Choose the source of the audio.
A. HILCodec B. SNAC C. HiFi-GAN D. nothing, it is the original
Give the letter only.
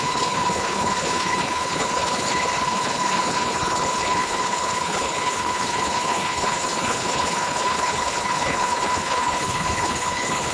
A